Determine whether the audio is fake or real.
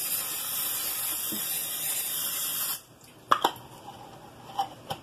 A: real